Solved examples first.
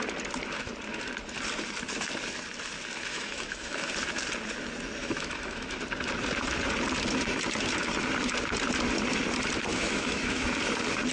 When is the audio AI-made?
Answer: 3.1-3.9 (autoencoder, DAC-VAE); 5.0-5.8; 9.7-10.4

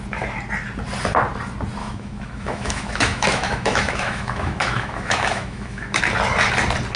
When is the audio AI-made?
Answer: 1.8-6.0 (autoencoder, DAC-VAE)